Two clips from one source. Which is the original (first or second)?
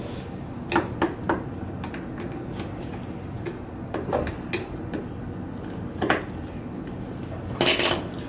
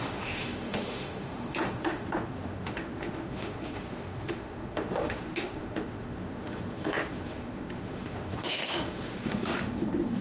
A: first